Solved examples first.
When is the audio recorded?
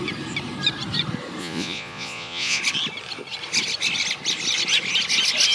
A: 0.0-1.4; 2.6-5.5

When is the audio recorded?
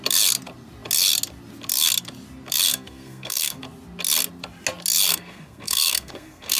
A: 0.0-2.7; 3.6-5.1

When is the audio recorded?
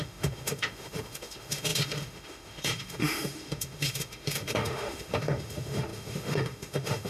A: none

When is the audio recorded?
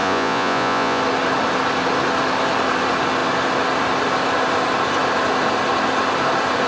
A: 1.0-6.7